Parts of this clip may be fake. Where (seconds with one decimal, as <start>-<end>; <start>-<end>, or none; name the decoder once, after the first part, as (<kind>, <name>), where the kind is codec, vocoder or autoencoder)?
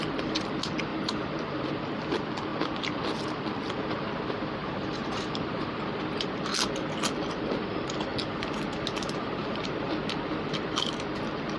0.9-1.7 (vocoder, BigVGAN v2); 2.5-3.0; 4.6-6.4